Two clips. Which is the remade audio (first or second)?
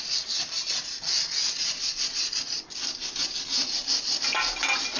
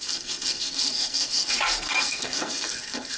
second